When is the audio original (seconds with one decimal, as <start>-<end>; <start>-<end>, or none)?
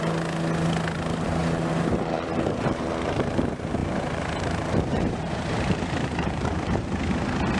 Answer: 0.0-1.4; 3.3-3.8; 7.0-7.6